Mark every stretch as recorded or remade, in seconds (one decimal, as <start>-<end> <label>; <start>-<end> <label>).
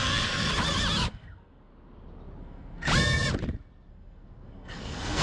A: 0.0-0.5 remade; 0.5-1.1 recorded; 1.1-1.7 remade; 1.7-2.4 recorded; 2.4-2.9 remade; 2.9-3.9 recorded; 3.9-5.2 remade